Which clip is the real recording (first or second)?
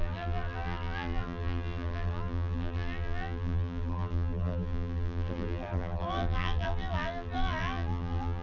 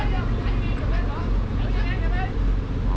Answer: second